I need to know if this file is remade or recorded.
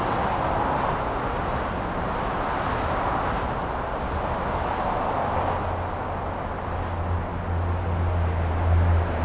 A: recorded